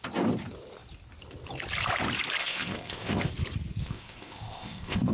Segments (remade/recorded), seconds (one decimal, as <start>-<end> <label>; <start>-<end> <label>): 0.0-2.4 recorded; 2.4-3.3 remade; 3.3-3.8 recorded; 3.8-5.1 remade